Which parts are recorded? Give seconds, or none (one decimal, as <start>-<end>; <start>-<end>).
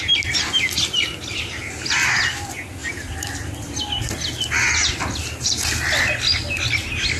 0.0-2.8; 3.8-7.2